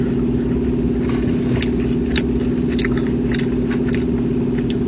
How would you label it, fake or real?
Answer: real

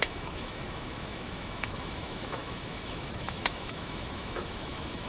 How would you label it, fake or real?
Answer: fake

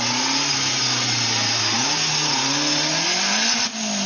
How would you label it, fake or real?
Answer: real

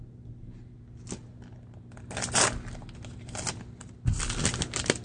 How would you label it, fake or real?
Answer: real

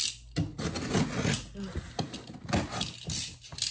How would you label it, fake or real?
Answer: real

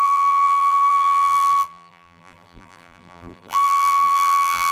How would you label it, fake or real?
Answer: fake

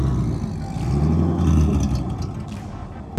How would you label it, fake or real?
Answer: real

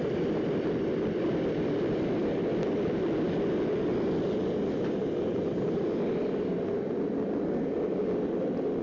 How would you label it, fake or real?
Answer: real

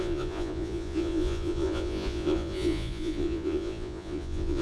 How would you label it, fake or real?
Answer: fake